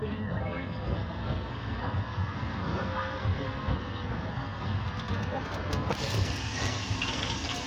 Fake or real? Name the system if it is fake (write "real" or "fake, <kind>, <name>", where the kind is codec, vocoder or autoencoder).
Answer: fake, codec, SNAC